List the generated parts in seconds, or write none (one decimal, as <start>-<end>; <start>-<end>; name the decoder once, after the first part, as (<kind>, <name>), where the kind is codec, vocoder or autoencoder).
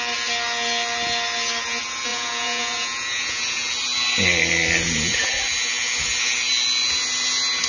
2.1-3.7 (vocoder, Vocos)